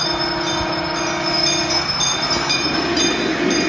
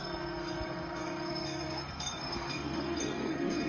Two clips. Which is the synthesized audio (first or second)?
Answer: second